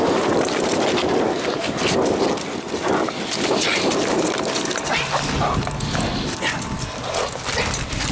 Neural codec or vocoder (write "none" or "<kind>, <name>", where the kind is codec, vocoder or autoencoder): none